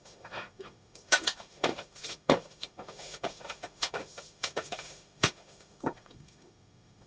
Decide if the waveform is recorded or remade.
remade